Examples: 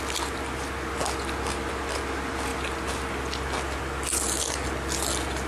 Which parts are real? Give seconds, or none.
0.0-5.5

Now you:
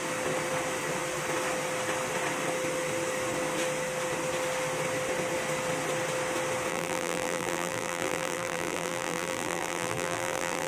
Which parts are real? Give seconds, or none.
0.0-6.7

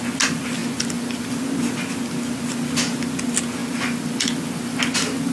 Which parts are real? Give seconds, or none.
0.0-0.6; 1.3-3.6; 4.8-5.3

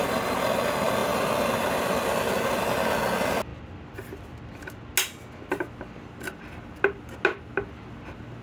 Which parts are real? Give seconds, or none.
0.0-3.5; 4.7-8.4

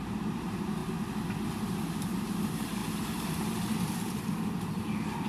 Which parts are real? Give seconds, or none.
0.8-2.0; 2.8-3.9

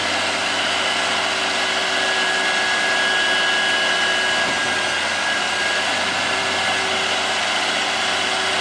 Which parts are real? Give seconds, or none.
2.8-4.6

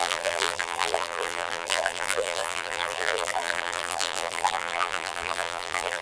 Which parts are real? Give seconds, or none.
none